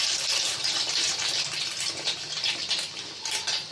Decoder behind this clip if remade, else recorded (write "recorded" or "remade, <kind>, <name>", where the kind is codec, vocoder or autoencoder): remade, vocoder, BigVGAN v2